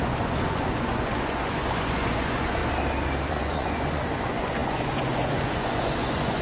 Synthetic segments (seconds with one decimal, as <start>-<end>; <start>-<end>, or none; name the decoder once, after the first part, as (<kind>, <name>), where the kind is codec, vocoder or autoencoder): 0.0-2.6 (vocoder, Vocos); 3.3-6.4